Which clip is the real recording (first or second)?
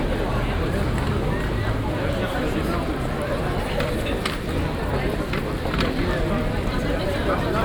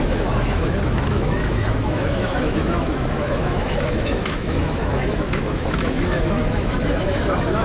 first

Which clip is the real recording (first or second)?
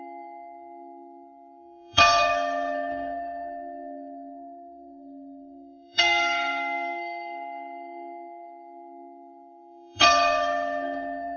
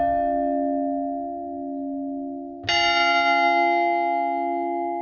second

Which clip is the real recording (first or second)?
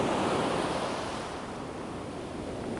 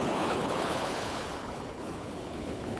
first